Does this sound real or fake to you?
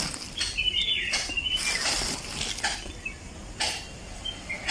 real